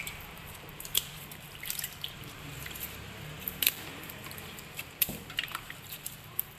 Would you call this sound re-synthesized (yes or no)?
yes